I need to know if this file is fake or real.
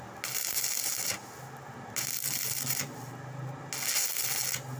real